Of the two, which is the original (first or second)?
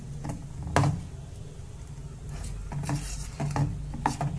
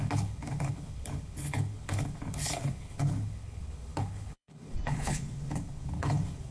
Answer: first